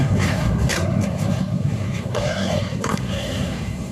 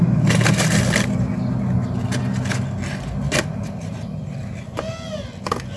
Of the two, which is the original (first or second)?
second